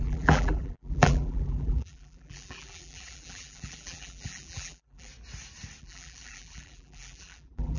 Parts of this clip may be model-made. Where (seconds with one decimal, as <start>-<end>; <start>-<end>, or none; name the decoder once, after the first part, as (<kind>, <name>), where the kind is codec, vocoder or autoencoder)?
0.0-5.1 (vocoder, BigVGAN v2); 5.8-7.8